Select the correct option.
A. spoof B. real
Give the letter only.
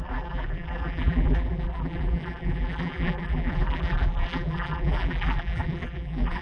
A